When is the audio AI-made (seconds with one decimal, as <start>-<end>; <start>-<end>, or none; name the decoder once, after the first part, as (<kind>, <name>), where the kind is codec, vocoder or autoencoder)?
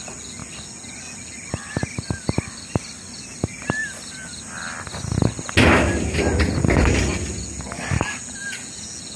none